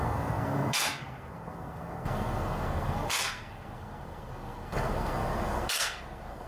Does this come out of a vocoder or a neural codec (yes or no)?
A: yes